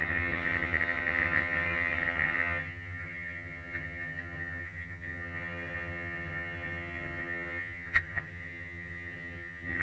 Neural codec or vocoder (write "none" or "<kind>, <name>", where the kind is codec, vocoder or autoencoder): vocoder, HiFi-GAN